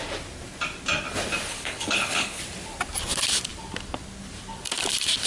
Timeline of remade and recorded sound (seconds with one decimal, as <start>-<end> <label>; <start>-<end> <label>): 0.0-1.5 recorded; 1.5-2.4 remade; 2.4-5.3 recorded